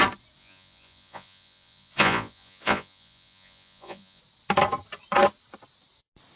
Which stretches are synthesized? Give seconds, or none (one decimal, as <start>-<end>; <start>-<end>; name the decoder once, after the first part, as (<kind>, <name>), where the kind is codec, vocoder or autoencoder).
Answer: 0.4-4.2 (vocoder, Vocos)